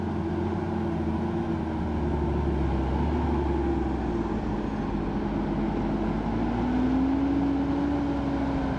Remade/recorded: recorded